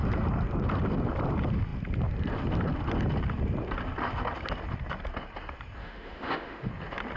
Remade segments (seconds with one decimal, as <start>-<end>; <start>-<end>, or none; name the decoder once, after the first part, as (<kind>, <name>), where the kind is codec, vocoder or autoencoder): 5.8-6.7 (autoencoder, DAC-VAE)